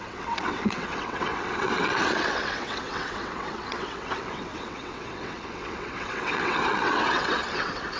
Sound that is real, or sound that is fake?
fake